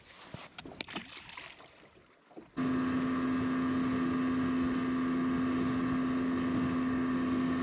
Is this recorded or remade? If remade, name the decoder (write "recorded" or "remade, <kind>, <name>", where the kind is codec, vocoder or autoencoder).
recorded